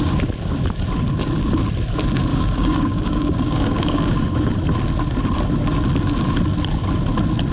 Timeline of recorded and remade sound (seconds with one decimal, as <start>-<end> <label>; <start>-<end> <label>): 0.0-2.3 recorded; 2.3-4.5 remade; 4.5-7.5 recorded